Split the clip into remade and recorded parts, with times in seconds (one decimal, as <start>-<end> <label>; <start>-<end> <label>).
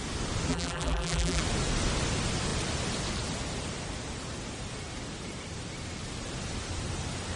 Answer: 0.0-0.5 recorded; 0.5-1.4 remade; 1.4-7.4 recorded